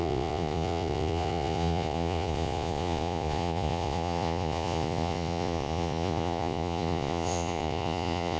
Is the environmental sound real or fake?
fake